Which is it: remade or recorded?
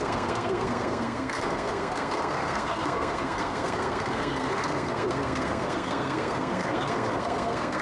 remade